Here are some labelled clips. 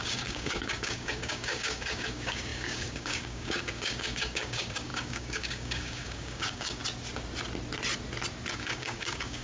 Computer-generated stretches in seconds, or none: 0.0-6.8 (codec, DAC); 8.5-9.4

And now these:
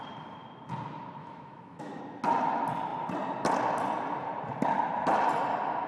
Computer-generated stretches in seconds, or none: 1.2-2.0 (autoencoder, DAC-VAE)

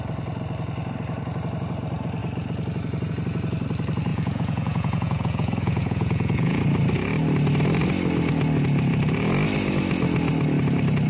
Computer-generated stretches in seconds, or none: 4.1-6.6 (vocoder, Vocos)

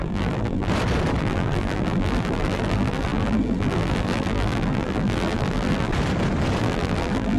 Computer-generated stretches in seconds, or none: 0.0-0.7 (vocoder, BigVGAN v2); 1.2-5.9; 6.6-7.4

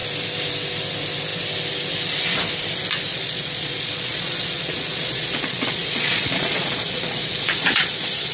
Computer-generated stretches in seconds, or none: 3.1-8.3 (vocoder, Vocos)